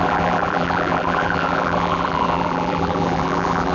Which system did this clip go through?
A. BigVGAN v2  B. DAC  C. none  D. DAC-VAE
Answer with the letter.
A